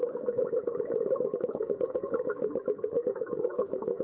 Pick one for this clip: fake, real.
fake